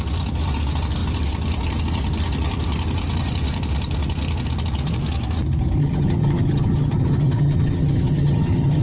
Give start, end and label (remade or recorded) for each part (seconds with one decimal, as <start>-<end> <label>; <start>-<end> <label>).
0.0-5.8 recorded; 5.8-8.8 remade